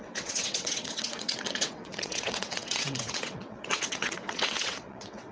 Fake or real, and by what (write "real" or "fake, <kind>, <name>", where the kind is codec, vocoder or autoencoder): fake, vocoder, WaveNeXt